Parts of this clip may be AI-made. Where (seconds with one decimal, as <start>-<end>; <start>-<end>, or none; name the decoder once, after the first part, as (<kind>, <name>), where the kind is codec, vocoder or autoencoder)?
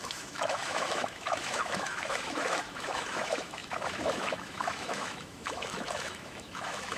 0.0-7.0 (autoencoder, DAC-VAE)